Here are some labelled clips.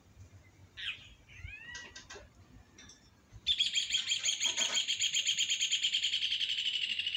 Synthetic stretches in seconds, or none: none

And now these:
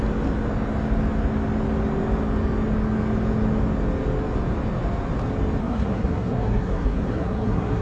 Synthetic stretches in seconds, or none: 5.6-7.8 (codec, SNAC)

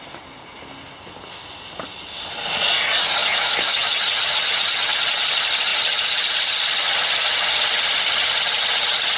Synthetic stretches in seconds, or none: 3.2-3.9 (autoencoder, DAC-VAE)

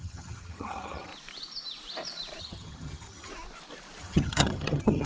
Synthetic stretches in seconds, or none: 0.0-1.1 (vocoder, HiFi-GAN); 2.4-3.3; 4.0-5.1

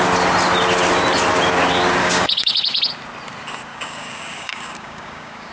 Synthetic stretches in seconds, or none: 2.0-2.8 (codec, DAC); 3.7-5.5

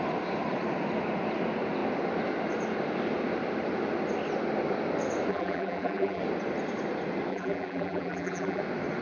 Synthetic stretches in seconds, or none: 5.3-6.2 (vocoder, BigVGAN v2); 7.3-8.6

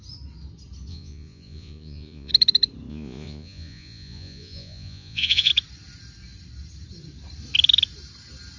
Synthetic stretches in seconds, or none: 0.9-2.3 (vocoder, Vocos); 2.9-5.5

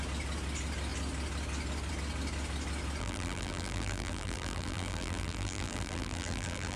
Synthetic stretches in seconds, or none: 3.0-6.8 (vocoder, BigVGAN v2)